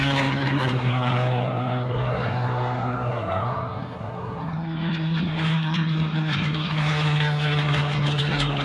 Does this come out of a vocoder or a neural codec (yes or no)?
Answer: yes